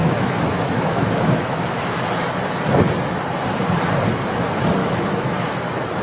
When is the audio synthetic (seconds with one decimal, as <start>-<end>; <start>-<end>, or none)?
0.0-1.8; 4.8-5.6